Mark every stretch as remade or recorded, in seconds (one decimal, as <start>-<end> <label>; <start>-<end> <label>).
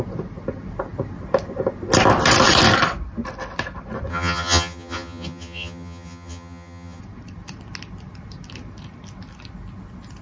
0.0-4.1 recorded; 4.1-7.0 remade; 7.0-10.2 recorded